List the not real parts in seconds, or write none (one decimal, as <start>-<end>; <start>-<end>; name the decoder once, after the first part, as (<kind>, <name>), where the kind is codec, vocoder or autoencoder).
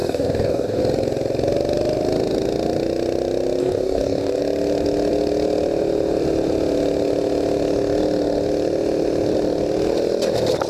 0.0-0.8 (codec, DAC); 3.6-4.4